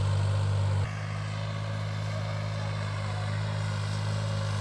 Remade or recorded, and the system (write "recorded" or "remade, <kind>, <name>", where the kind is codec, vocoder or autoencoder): recorded